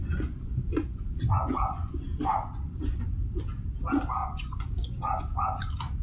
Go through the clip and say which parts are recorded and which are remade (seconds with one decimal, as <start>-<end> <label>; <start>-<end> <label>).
0.0-3.1 remade; 3.1-4.2 recorded; 4.2-5.2 remade; 5.2-6.0 recorded